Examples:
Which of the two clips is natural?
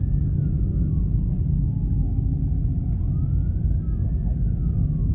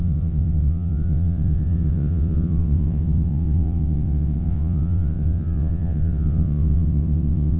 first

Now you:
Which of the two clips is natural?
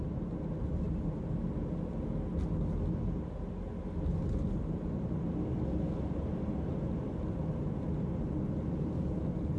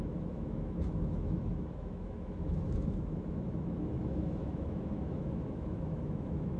first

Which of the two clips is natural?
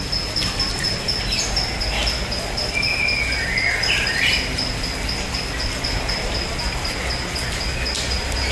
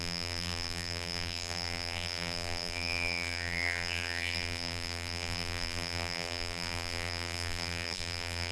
first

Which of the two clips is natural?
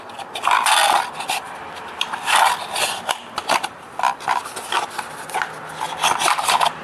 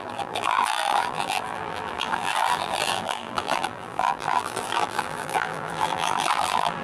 first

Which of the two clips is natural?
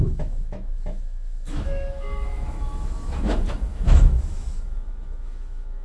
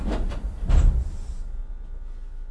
second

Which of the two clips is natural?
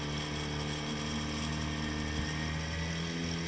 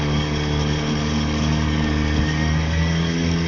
first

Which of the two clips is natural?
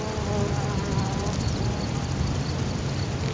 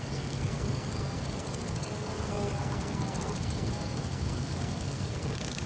first